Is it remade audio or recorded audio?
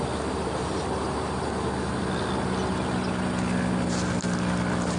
recorded